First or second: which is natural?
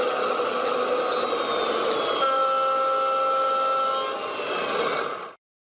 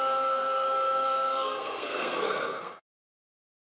first